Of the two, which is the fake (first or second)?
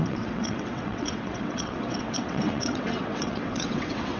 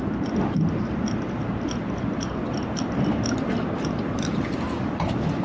first